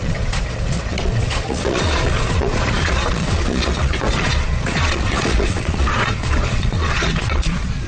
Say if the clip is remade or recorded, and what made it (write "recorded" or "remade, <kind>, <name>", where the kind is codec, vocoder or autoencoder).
remade, vocoder, Vocos